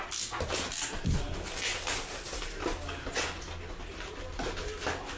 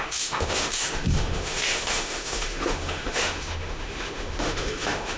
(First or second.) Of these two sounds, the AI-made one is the second